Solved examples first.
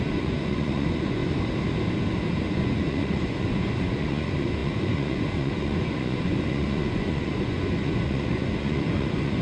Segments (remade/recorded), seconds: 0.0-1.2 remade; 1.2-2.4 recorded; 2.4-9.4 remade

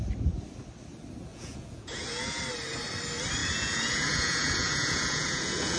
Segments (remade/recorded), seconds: 0.0-1.3 recorded; 1.3-2.4 remade; 2.4-3.4 recorded; 3.4-5.8 remade

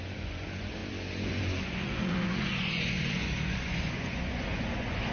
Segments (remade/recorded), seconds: 0.0-5.1 remade

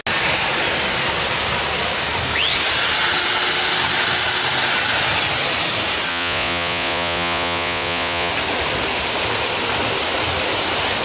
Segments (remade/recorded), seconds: 0.0-6.1 recorded; 6.1-8.3 remade; 8.3-11.0 recorded

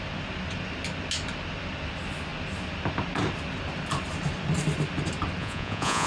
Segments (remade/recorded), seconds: 0.0-5.4 recorded; 5.4-6.1 remade

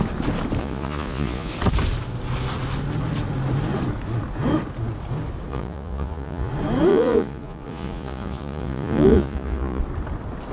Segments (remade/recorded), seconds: 0.0-0.6 recorded; 0.6-1.5 remade; 1.5-5.5 recorded; 5.5-6.5 remade; 6.5-6.9 recorded; 6.9-9.8 remade; 9.8-10.5 recorded

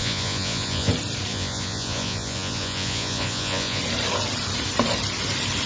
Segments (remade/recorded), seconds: 0.0-0.9 remade; 0.9-1.3 recorded; 1.3-3.8 remade; 3.8-5.7 recorded